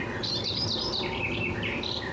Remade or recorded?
remade